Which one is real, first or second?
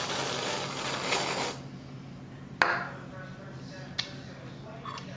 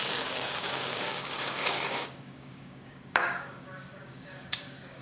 first